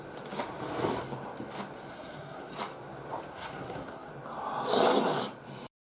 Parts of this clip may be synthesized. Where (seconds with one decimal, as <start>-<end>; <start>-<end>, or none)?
1.9-2.5; 3.3-4.1